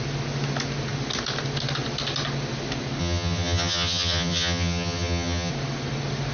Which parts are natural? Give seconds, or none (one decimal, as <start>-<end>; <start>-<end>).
0.0-3.0; 5.5-6.3